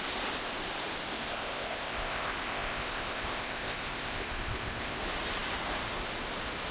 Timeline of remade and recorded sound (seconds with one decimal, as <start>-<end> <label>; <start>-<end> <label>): 0.0-1.1 recorded; 1.1-5.0 remade; 5.0-6.7 recorded